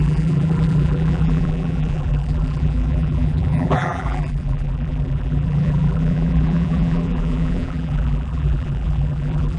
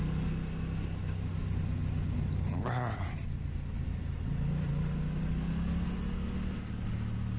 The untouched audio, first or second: second